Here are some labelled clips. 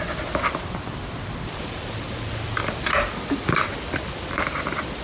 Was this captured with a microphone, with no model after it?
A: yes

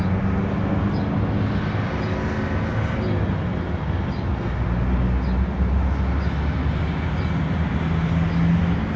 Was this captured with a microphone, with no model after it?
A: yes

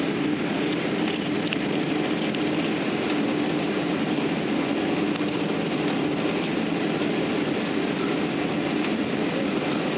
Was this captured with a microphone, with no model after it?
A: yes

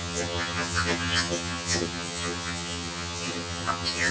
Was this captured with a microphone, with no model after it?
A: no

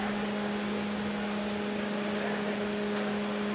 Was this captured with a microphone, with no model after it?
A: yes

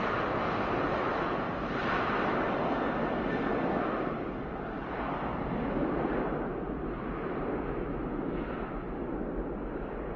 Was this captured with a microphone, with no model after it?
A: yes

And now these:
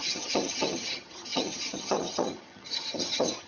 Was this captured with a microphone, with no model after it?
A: no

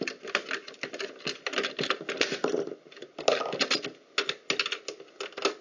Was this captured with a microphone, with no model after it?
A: yes